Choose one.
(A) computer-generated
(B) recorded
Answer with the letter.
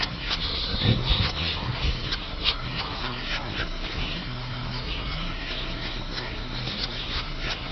A